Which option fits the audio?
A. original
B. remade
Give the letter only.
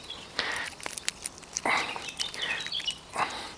A